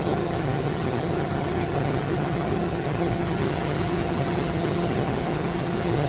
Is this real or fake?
fake